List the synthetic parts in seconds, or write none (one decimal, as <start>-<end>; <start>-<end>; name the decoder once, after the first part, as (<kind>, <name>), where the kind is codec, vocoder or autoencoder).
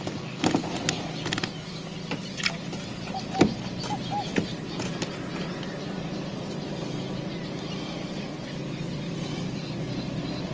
none